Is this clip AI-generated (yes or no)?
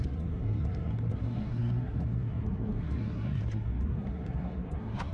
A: yes